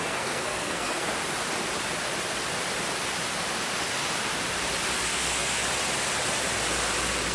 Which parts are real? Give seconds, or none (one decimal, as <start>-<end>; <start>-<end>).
1.1-5.1; 5.6-7.3